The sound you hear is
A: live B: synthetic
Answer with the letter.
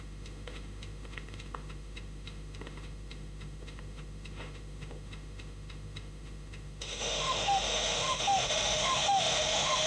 B